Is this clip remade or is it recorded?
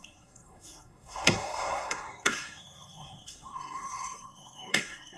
remade